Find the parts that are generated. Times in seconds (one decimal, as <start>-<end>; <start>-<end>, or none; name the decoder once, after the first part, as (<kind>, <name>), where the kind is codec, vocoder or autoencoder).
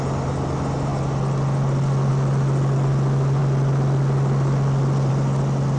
none